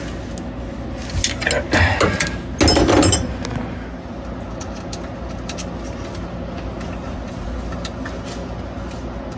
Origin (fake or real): real